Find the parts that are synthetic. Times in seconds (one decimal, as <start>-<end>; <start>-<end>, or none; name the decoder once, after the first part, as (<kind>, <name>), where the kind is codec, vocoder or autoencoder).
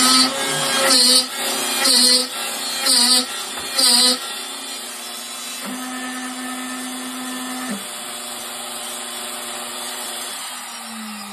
9.7-10.5 (vocoder, BigVGAN v2)